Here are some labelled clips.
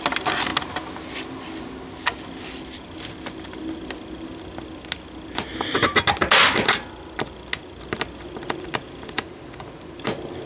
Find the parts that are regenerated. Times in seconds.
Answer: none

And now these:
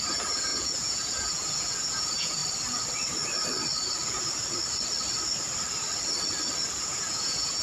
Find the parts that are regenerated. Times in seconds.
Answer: 0.0-2.4 (vocoder, Vocos); 6.8-7.6

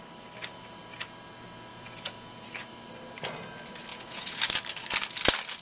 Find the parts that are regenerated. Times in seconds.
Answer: 1.7-2.5 (vocoder, Vocos); 3.9-4.4

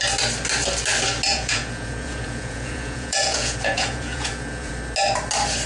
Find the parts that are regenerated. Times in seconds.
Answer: 1.3-4.7 (vocoder, Vocos)

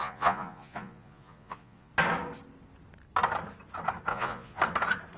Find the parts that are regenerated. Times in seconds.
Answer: 0.0-1.9 (vocoder, Vocos); 4.1-4.6